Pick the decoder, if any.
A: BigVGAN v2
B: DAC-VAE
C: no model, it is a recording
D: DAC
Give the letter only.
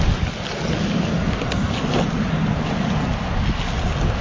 C